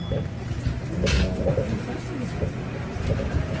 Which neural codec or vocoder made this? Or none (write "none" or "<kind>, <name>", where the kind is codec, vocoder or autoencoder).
none